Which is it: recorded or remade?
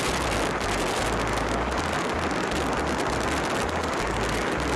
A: recorded